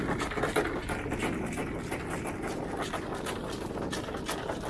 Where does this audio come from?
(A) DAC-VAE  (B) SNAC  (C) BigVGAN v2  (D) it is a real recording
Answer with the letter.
D